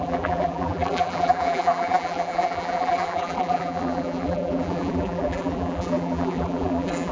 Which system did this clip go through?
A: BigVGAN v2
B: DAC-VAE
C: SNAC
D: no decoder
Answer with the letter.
A